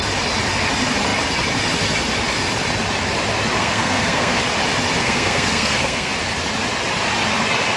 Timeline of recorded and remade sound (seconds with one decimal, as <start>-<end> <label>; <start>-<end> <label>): 0.0-3.6 recorded; 3.6-4.4 remade; 4.4-5.0 recorded; 5.0-6.1 remade; 6.1-7.8 recorded